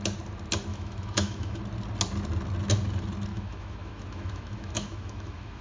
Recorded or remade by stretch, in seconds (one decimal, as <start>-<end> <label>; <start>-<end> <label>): 0.0-0.7 recorded; 0.7-1.6 remade; 1.6-3.3 recorded; 3.3-5.6 remade